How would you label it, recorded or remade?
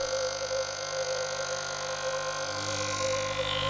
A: remade